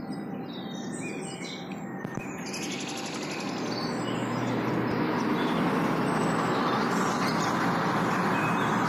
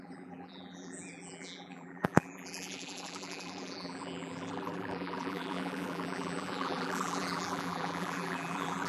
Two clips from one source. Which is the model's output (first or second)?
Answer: second